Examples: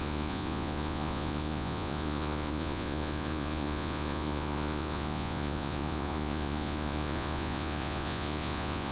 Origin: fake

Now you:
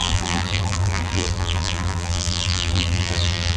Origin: fake